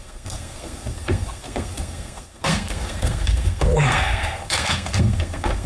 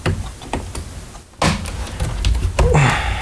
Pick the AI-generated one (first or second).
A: first